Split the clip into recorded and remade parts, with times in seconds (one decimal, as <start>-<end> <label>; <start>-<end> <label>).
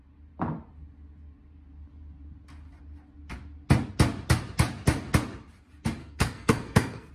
0.0-6.0 recorded; 6.0-7.1 remade